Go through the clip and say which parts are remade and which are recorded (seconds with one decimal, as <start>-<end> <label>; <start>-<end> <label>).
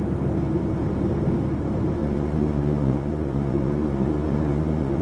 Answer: 0.0-2.0 recorded; 2.0-5.0 remade